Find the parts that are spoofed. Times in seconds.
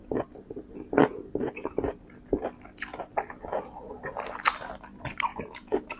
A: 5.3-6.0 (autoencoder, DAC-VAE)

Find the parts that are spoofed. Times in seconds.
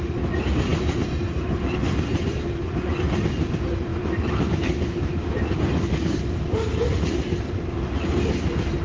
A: 3.9-5.3 (autoencoder, DAC-VAE)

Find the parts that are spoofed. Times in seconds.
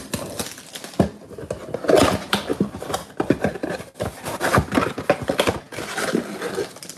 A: none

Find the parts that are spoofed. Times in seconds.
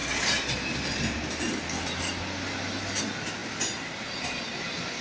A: none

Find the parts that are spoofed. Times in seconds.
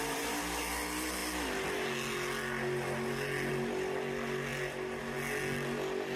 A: none